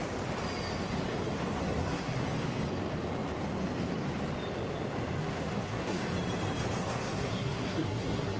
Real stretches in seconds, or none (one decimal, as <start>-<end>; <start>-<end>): 0.0-1.6; 2.2-5.2; 6.0-6.8